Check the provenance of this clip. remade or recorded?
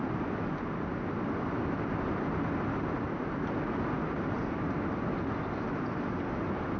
recorded